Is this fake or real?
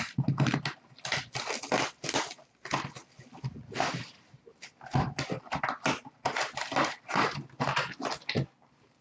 real